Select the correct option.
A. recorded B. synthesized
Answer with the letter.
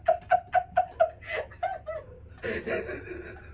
A